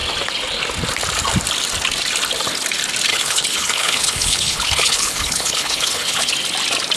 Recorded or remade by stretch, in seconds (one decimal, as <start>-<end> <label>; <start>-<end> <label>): 0.0-3.1 recorded; 3.1-6.3 remade; 6.3-7.0 recorded